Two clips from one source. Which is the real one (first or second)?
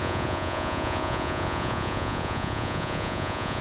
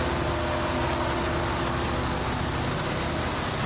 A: second